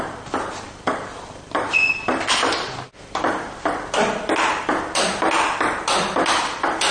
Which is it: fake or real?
fake